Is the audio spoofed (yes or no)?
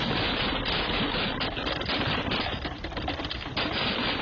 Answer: no